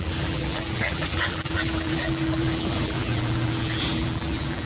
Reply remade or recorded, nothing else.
remade